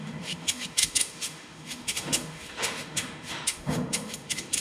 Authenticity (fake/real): fake